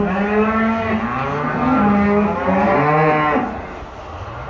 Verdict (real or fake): real